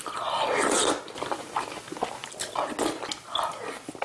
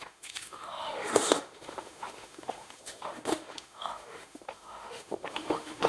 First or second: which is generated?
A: second